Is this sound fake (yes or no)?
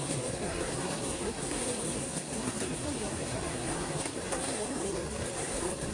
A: yes